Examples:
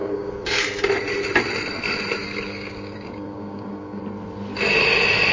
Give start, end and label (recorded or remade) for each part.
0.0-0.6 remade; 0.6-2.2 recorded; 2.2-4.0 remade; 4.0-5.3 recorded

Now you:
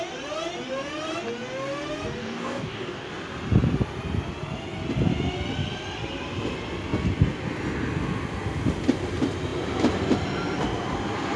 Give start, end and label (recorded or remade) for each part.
0.0-2.2 recorded; 2.2-3.1 remade; 3.1-11.4 recorded

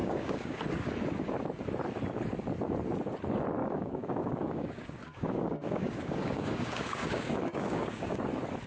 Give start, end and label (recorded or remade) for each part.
0.0-0.6 remade; 0.6-3.6 recorded; 3.6-8.1 remade; 8.1-8.7 recorded

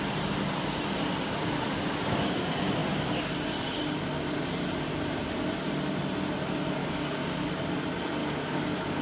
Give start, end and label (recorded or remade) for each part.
0.0-6.8 recorded; 6.8-7.5 remade; 7.5-8.2 recorded; 8.2-9.0 remade

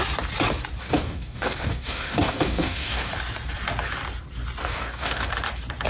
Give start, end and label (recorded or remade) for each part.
0.0-0.8 recorded; 0.8-3.1 remade; 3.1-4.6 recorded; 4.6-5.3 remade; 5.3-5.9 recorded

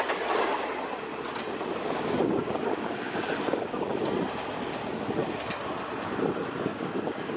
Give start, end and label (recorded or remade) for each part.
0.0-1.8 recorded; 1.8-3.8 remade; 3.8-6.7 recorded; 6.7-7.4 remade